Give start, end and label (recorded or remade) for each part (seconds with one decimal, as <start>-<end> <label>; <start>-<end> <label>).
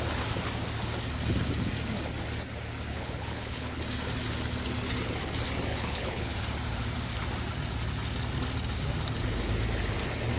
0.0-2.9 recorded; 2.9-3.8 remade; 3.8-5.7 recorded; 5.7-6.3 remade; 6.3-10.4 recorded